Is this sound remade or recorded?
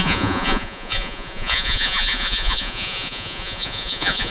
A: remade